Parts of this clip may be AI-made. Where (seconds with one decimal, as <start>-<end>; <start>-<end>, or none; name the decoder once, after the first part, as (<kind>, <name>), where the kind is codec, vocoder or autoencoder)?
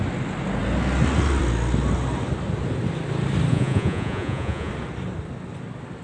3.5-4.7 (vocoder, Vocos)